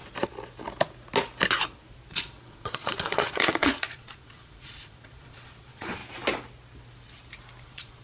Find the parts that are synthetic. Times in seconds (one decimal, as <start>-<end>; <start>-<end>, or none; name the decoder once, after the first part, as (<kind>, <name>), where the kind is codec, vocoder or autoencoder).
2.1-6.0 (vocoder, Vocos); 7.6-8.0